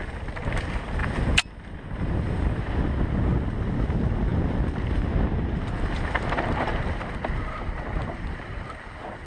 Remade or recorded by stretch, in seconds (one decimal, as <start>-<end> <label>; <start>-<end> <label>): 0.0-1.0 recorded; 1.0-2.6 remade; 2.6-9.3 recorded